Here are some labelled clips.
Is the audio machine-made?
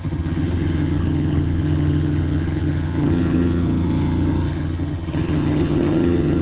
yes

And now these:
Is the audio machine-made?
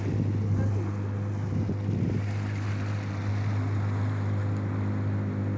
no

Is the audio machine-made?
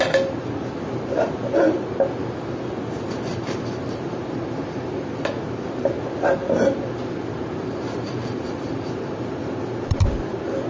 no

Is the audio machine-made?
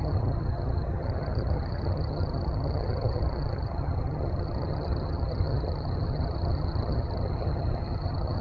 yes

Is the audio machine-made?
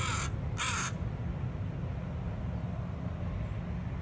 no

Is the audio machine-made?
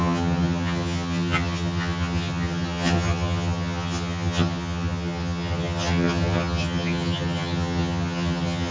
yes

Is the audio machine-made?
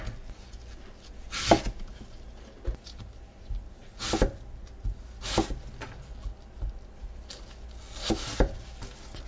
no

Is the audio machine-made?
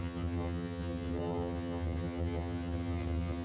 yes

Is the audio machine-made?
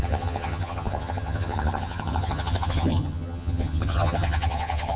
yes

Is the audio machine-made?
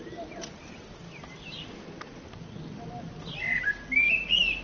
no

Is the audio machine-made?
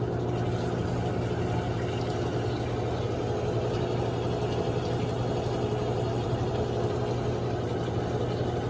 no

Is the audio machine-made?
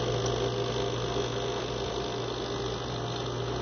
no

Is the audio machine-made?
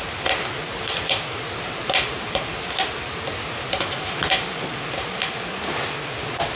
no